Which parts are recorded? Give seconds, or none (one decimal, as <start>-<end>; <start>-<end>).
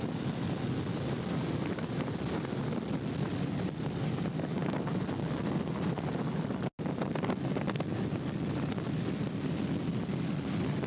0.0-10.9